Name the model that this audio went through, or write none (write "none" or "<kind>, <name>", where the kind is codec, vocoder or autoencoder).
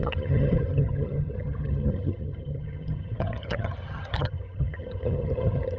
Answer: vocoder, HiFi-GAN